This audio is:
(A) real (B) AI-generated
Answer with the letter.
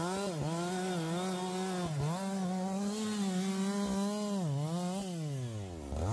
A